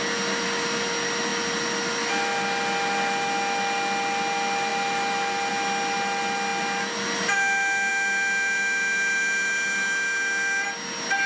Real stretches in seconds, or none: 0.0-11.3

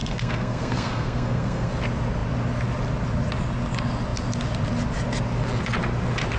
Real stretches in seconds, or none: 1.7-6.4

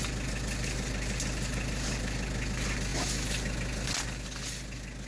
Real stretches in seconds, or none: 0.0-5.1

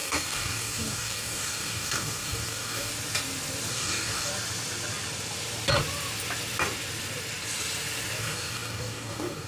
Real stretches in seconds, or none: 2.9-3.7; 4.3-8.2

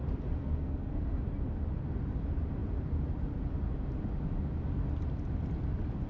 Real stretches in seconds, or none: 0.0-0.4; 1.2-6.1

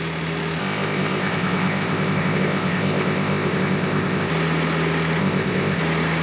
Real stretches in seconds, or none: 0.0-0.6; 4.3-5.2; 5.8-6.2

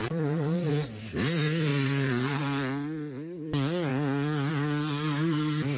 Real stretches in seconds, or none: 0.7-1.7; 2.4-5.8

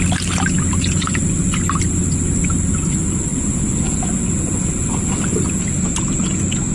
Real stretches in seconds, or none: 0.0-6.7